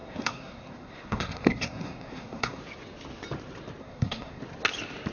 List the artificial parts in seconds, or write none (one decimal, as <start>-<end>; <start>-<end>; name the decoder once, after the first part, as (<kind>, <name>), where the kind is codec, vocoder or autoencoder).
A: 0.0-2.6 (codec, SNAC); 3.8-4.4